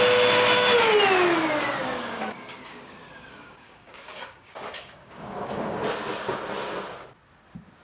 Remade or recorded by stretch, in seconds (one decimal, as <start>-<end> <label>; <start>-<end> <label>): 0.0-1.8 recorded; 1.8-5.8 remade; 5.8-7.8 recorded